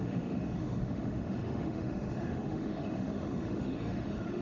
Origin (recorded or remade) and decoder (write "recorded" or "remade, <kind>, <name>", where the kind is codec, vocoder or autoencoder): remade, autoencoder, DAC-VAE